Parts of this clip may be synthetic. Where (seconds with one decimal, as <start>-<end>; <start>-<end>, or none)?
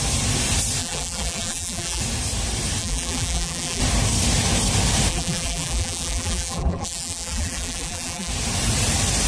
0.8-2.0; 2.8-3.8; 5.1-8.3